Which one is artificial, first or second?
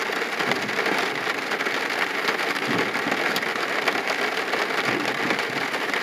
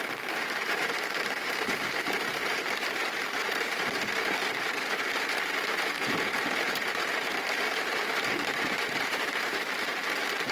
second